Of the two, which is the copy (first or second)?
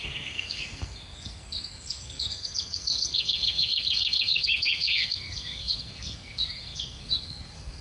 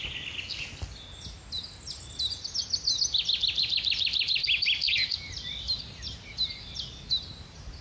first